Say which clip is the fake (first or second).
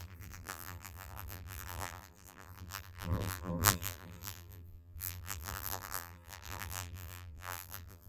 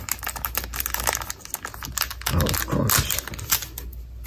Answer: first